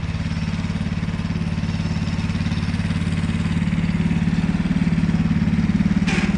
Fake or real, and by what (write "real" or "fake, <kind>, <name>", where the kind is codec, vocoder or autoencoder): real